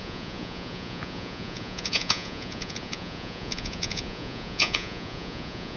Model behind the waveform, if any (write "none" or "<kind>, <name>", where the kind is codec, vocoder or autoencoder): vocoder, Vocos